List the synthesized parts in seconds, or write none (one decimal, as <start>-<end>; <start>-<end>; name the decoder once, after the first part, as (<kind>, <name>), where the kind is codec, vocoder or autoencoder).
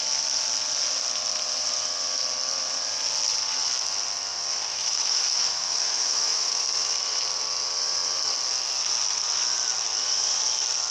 4.7-6.6 (autoencoder, DAC-VAE)